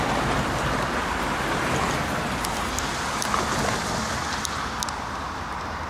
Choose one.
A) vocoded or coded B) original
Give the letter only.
B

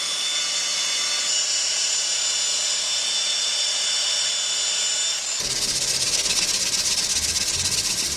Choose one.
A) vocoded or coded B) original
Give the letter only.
B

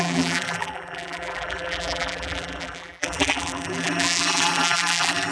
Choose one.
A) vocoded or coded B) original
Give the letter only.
A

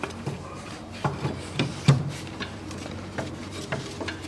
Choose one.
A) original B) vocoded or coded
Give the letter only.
B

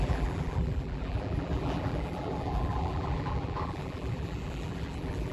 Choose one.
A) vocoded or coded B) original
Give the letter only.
A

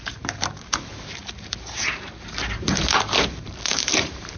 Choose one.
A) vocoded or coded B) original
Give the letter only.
A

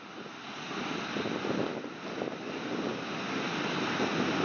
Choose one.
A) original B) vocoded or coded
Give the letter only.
A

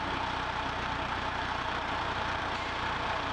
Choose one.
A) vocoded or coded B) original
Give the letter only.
A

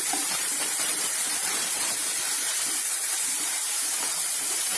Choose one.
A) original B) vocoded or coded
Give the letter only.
B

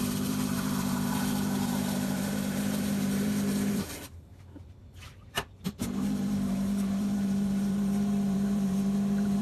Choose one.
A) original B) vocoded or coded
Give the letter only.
B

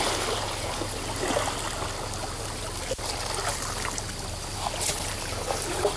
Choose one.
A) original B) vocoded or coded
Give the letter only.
A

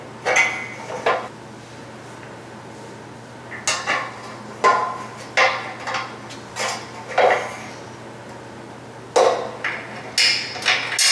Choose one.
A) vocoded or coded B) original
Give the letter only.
B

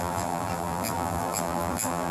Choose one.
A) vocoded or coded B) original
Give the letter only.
A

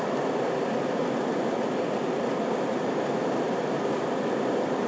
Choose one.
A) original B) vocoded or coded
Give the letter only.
B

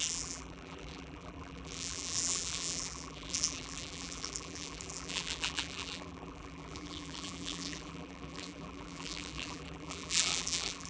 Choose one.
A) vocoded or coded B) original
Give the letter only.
A